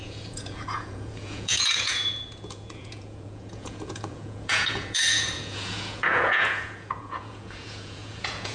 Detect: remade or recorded remade